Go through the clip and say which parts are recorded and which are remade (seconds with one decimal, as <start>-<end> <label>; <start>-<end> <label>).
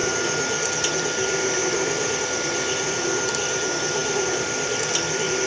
0.0-3.3 recorded; 3.3-5.5 remade